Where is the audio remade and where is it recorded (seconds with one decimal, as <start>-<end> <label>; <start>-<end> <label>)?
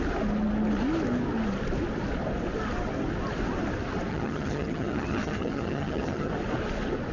0.0-4.1 recorded; 4.1-6.3 remade; 6.3-7.1 recorded